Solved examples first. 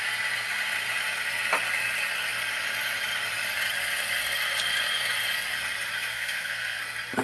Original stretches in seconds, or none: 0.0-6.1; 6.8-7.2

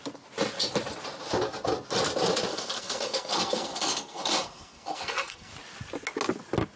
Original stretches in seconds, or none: 0.0-2.5; 5.5-6.8

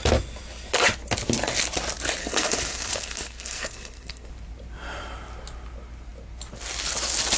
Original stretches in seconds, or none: 0.0-2.2; 4.3-7.4

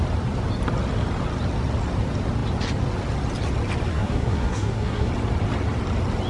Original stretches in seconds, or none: 0.0-3.9; 5.1-6.3

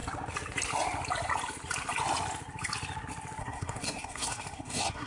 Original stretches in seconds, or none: 0.0-3.4

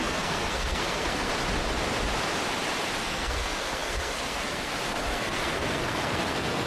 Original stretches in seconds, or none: 1.3-3.0